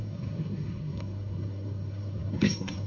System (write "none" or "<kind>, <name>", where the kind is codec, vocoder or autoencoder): codec, SNAC